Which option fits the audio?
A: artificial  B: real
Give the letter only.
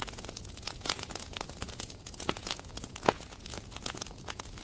A